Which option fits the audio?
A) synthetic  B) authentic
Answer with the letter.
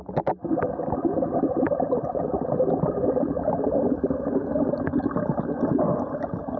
B